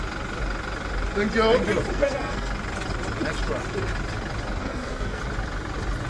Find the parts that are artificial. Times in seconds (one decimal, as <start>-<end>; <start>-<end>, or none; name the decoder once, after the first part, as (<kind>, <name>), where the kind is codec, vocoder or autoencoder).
1.9-2.5 (codec, SNAC); 4.6-5.2